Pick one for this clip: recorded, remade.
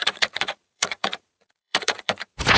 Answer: remade